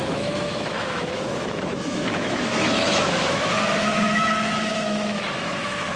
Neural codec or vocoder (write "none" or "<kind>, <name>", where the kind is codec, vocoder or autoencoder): autoencoder, DAC-VAE